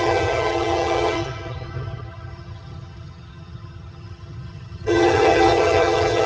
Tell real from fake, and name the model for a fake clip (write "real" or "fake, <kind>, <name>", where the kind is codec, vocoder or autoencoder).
fake, vocoder, HiFi-GAN